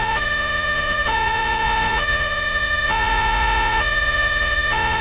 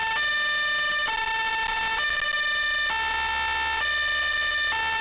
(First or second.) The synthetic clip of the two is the first